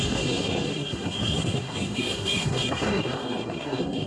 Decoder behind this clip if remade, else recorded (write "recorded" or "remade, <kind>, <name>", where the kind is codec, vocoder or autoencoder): remade, codec, SNAC